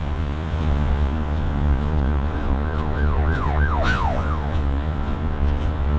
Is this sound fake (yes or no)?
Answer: yes